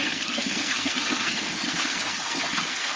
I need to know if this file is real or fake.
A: fake